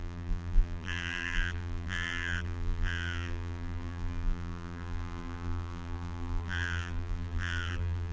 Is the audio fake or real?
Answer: fake